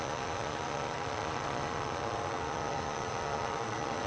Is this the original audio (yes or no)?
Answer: no